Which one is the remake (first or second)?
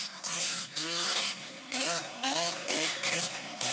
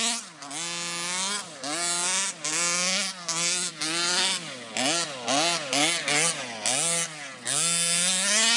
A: first